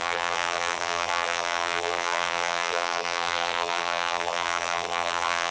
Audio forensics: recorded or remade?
remade